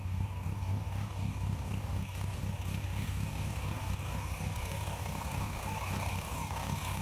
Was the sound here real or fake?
fake